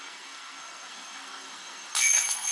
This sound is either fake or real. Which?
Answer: fake